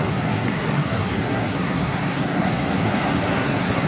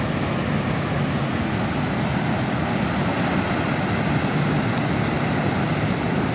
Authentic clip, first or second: second